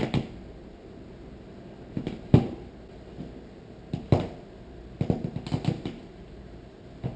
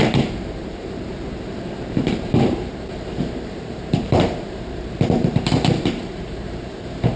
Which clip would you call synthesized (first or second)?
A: second